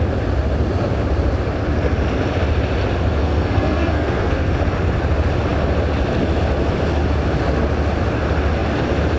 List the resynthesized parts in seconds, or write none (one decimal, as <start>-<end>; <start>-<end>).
3.2-4.5